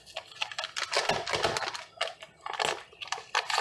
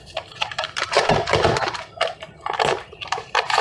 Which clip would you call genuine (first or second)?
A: first